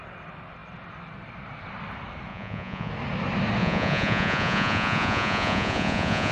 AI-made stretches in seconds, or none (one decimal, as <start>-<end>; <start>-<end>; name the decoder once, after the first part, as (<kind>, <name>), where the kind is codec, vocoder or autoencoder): 2.3-2.9 (vocoder, Vocos); 3.6-6.3